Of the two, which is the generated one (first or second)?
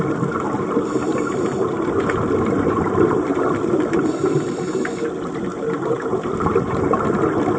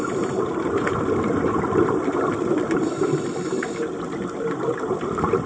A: second